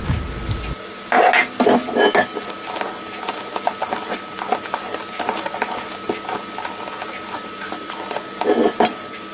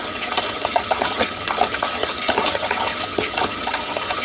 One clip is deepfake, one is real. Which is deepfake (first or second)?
second